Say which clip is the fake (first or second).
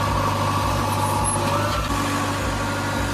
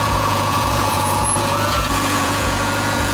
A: second